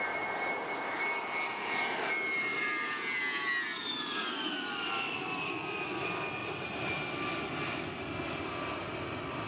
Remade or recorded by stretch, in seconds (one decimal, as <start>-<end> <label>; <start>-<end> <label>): 0.0-2.5 recorded; 2.5-3.2 remade; 3.2-6.4 recorded; 6.4-7.0 remade; 7.0-9.5 recorded